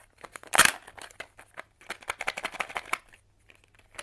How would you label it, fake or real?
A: real